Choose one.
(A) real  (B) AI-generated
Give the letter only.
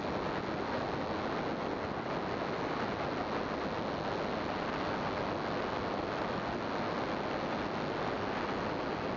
A